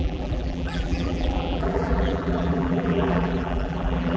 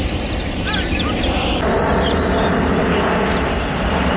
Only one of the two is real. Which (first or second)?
second